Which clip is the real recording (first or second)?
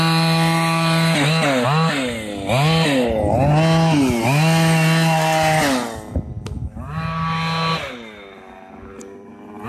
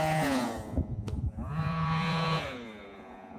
first